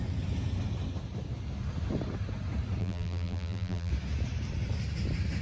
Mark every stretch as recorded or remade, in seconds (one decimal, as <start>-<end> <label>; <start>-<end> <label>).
0.0-2.8 recorded; 2.8-3.9 remade; 3.9-5.4 recorded